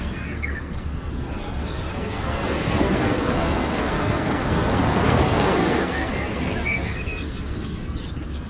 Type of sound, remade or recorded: remade